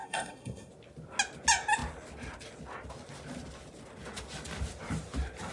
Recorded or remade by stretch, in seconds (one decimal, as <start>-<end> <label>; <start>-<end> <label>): 0.0-0.7 remade; 0.7-5.5 recorded